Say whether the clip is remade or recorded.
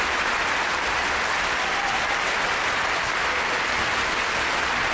recorded